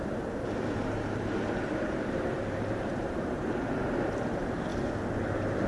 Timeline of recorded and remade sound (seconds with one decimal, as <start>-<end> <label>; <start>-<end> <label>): 0.0-0.8 recorded; 0.8-3.6 remade; 3.6-5.7 recorded